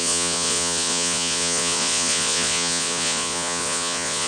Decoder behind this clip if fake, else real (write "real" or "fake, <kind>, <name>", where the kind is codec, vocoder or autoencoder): fake, vocoder, Vocos